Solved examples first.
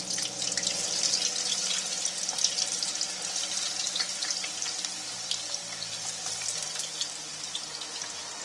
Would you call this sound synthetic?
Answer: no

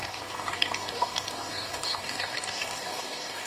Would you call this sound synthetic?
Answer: yes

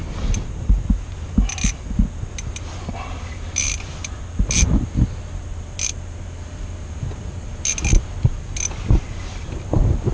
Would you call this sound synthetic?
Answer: no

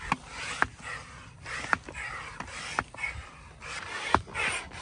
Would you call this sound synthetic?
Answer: no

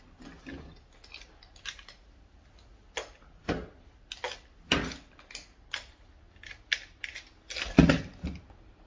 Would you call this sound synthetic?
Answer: no